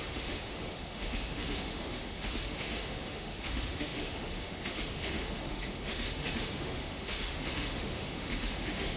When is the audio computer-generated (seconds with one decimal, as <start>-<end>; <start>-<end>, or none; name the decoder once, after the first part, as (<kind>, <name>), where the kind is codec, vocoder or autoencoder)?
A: 0.0-9.0 (autoencoder, DAC-VAE)